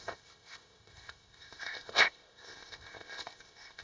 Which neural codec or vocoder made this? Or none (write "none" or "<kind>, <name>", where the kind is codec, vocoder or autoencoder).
codec, ZipCodec